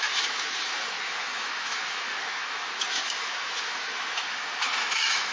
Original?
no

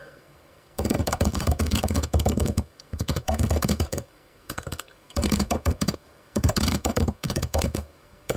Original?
no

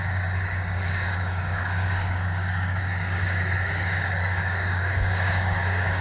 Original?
no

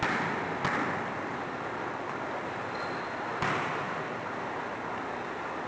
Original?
yes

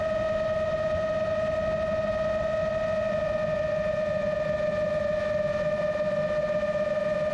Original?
yes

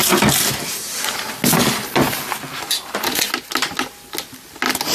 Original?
yes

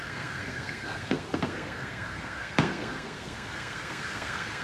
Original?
no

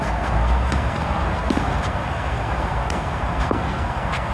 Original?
no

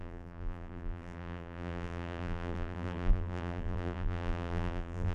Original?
no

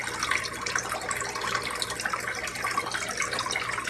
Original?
yes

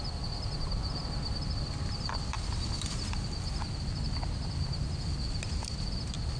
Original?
yes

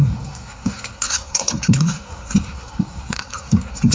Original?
no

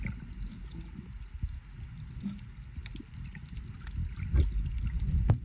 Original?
yes